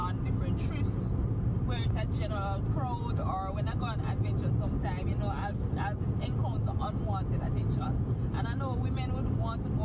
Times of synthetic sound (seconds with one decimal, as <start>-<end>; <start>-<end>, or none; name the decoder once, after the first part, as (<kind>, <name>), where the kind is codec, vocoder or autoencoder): none